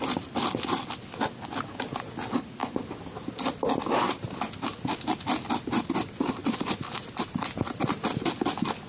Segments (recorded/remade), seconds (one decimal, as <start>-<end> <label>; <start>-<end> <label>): 0.0-6.4 recorded; 6.4-8.3 remade; 8.3-8.9 recorded